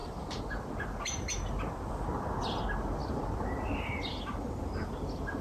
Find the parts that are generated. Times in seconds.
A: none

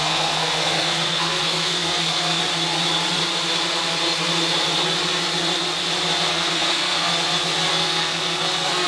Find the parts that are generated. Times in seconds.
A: 0.0-2.4; 6.3-7.1; 7.7-8.9